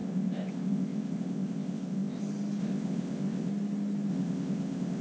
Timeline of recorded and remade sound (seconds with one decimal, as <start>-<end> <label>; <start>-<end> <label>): 0.0-2.2 remade; 2.2-2.6 recorded; 2.6-3.5 remade; 3.5-4.1 recorded; 4.1-5.0 remade